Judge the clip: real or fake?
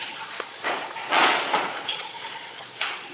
fake